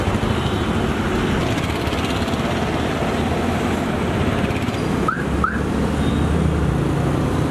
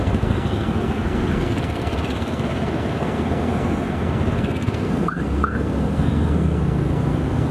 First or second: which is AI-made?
second